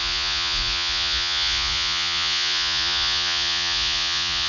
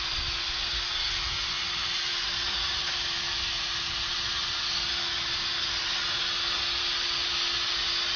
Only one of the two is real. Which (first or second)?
second